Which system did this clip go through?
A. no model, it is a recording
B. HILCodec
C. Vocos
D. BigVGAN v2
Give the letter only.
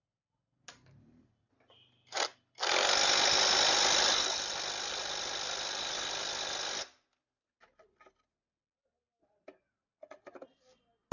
A